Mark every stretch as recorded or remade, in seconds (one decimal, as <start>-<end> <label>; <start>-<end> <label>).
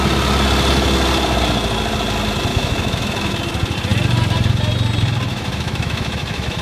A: 0.0-2.5 recorded; 2.5-3.4 remade; 3.4-5.3 recorded; 5.3-6.6 remade